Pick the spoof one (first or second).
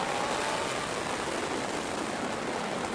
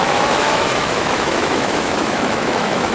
second